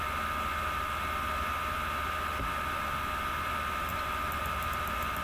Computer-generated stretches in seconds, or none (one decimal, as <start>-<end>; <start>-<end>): none